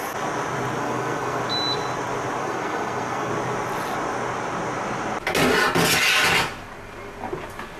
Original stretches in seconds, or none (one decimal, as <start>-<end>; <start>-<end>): 0.0-0.8; 1.4-2.4; 3.3-7.8